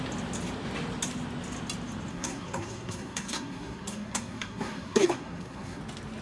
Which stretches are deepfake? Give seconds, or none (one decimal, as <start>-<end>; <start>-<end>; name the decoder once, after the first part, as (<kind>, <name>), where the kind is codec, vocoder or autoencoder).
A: 2.1-5.8 (codec, SNAC)